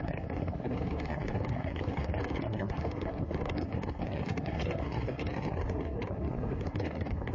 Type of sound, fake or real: fake